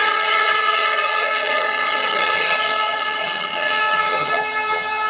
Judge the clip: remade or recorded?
remade